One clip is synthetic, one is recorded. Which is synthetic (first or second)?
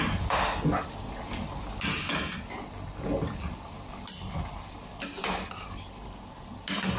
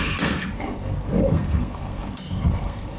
second